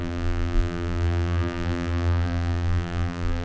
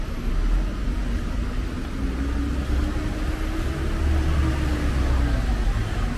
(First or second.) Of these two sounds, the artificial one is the first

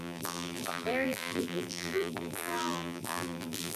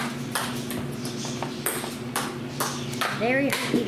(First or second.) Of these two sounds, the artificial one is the first